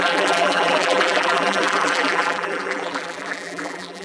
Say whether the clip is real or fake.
fake